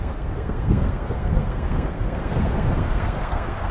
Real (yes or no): no